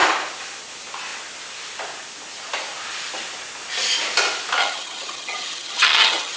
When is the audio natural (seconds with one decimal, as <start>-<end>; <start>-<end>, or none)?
0.0-4.6